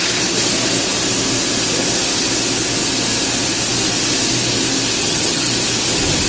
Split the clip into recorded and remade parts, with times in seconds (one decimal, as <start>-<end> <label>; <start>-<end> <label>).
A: 0.0-5.0 recorded; 5.0-5.5 remade; 5.5-6.3 recorded